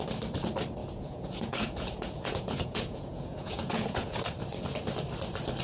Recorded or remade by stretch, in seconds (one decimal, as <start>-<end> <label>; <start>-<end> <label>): 0.0-0.8 recorded; 0.8-4.2 remade; 4.2-5.6 recorded